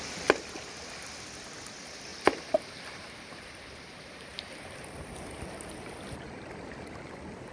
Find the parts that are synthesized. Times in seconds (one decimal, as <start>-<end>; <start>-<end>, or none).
2.1-5.4